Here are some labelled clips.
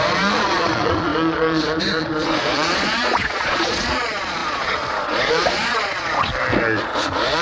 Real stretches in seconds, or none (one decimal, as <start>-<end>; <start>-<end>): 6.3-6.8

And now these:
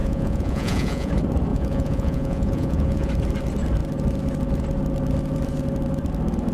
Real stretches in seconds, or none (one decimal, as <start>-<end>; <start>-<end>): 1.1-1.5; 3.1-6.5

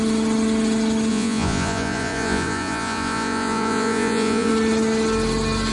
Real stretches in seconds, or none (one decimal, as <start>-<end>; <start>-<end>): 0.0-1.1; 4.5-5.7